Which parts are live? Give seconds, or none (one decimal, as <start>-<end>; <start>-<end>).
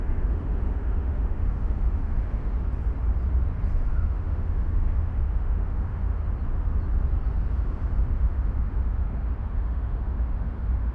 2.4-3.9; 6.2-7.5